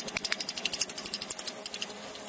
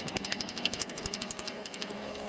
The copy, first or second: second